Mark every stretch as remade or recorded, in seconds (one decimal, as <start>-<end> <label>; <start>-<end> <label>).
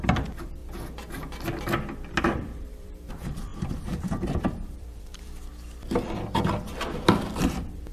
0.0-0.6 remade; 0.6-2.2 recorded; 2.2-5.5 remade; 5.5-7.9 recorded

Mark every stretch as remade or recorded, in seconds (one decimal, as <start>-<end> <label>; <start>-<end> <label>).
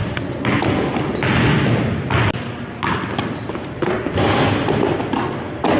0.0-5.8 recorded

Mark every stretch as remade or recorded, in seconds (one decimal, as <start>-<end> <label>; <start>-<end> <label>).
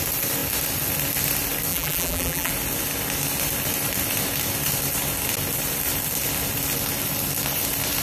0.0-1.7 recorded; 1.7-2.5 remade; 2.5-8.0 recorded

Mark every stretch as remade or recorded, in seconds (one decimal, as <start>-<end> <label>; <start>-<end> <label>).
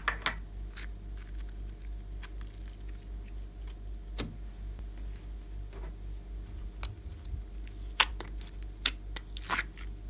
0.0-10.1 recorded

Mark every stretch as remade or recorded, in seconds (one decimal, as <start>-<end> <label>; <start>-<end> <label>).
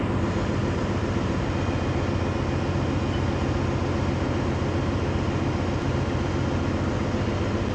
0.0-0.6 recorded; 0.6-1.5 remade; 1.5-7.7 recorded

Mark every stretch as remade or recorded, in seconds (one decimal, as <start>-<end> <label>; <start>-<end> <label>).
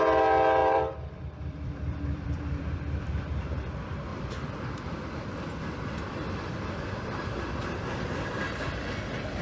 0.0-0.6 recorded; 0.6-3.6 remade; 3.6-4.1 recorded; 4.1-8.5 remade; 8.5-9.4 recorded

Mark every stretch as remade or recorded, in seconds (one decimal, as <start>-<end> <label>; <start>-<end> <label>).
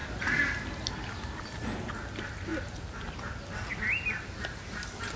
0.0-5.2 recorded